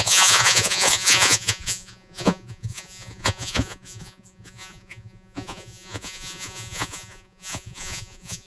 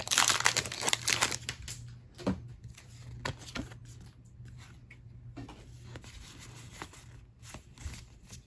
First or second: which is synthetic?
first